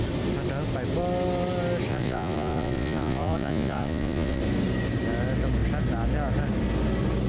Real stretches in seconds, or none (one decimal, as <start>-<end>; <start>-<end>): 0.0-1.9; 4.4-7.3